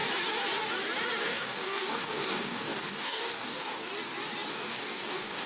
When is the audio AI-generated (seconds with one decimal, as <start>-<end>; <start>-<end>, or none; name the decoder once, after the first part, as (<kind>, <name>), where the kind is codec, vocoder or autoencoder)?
1.2-3.9 (codec, DAC); 4.5-5.5